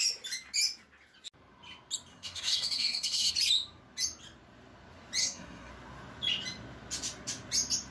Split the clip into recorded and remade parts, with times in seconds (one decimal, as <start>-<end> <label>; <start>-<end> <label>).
0.0-2.1 recorded; 2.1-3.3 remade; 3.3-5.2 recorded; 5.2-5.7 remade; 5.7-7.9 recorded